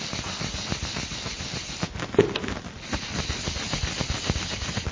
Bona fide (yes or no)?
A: yes